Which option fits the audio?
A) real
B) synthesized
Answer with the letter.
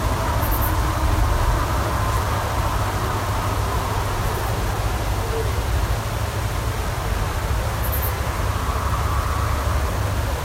A